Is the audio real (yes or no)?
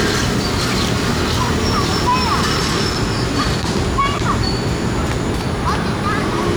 yes